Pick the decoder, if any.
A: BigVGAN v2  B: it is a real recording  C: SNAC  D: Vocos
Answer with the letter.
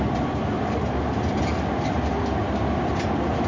B